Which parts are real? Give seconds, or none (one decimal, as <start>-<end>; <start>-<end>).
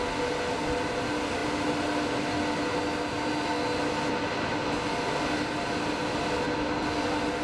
0.0-7.4